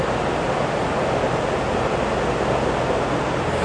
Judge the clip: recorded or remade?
recorded